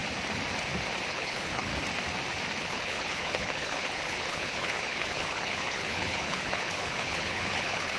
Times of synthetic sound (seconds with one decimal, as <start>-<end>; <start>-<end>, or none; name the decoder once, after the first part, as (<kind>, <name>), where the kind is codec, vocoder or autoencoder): 1.1-1.7 (codec, HILCodec); 2.6-8.0